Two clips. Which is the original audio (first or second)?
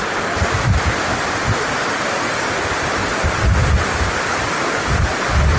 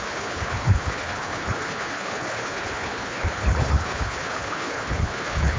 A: first